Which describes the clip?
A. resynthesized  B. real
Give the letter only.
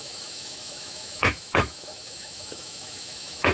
A